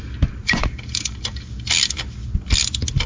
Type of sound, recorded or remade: recorded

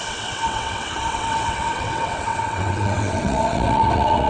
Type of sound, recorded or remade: remade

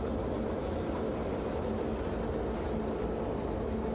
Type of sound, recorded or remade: recorded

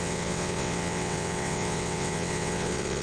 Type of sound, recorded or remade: remade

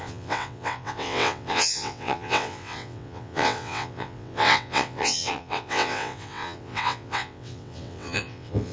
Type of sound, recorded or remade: remade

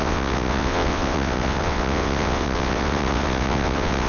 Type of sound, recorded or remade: remade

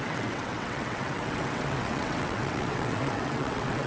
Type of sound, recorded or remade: remade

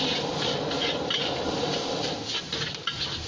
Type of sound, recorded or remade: recorded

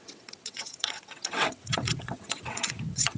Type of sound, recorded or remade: remade